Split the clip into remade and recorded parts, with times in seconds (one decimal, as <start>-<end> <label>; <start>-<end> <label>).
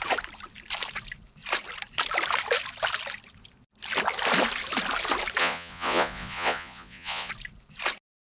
0.0-5.4 recorded; 5.4-7.3 remade; 7.3-8.3 recorded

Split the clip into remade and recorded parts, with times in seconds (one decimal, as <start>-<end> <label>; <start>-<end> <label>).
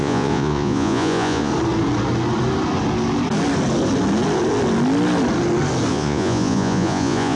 0.0-1.5 remade; 1.5-5.9 recorded; 5.9-7.4 remade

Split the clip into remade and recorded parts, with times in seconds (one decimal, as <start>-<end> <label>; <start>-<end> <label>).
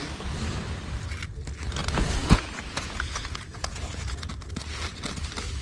0.0-1.8 recorded; 1.8-4.3 remade; 4.3-5.6 recorded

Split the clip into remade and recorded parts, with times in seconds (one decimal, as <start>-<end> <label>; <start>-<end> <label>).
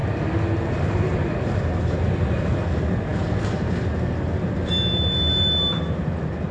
0.0-6.5 recorded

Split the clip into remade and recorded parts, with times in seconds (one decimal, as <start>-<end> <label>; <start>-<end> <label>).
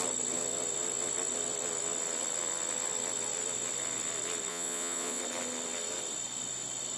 0.0-4.5 recorded; 4.5-5.2 remade; 5.2-7.0 recorded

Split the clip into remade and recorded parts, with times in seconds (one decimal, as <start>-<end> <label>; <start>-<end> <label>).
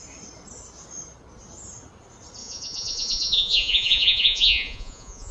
0.0-2.4 recorded; 2.4-5.3 remade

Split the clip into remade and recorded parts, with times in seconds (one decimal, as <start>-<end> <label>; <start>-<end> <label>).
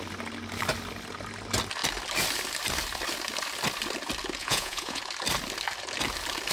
0.0-4.4 recorded; 4.4-5.0 remade; 5.0-6.5 recorded